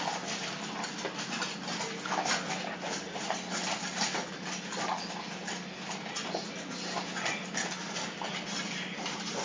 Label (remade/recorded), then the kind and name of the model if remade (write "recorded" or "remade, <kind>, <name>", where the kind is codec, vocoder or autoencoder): recorded